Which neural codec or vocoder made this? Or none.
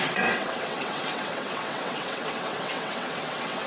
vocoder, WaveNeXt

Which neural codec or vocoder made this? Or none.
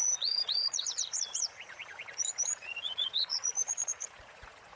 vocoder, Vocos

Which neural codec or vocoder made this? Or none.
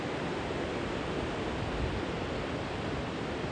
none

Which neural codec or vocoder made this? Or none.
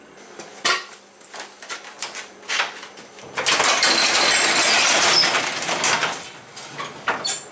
none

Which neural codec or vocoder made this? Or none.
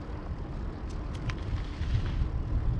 none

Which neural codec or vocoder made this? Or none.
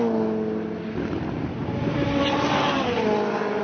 none